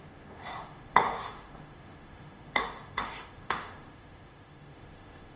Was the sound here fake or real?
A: fake